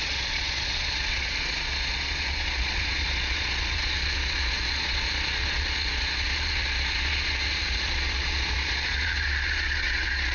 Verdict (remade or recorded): remade